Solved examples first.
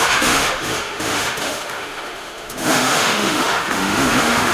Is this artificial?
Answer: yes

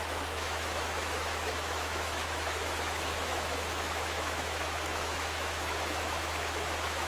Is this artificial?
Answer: yes